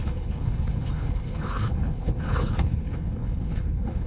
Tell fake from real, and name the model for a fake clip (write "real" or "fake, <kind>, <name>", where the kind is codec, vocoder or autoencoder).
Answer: fake, codec, HILCodec